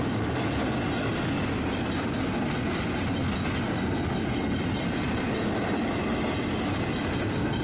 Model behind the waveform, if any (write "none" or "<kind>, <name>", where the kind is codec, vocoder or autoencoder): none